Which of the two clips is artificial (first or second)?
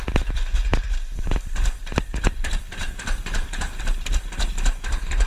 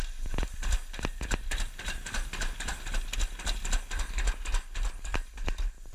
first